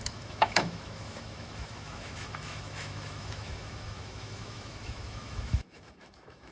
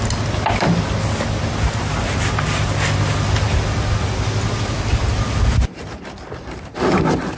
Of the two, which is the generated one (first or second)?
first